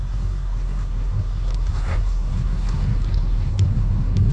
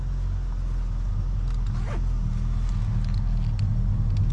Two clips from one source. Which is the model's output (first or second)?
first